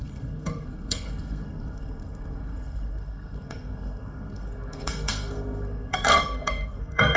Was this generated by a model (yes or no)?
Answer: yes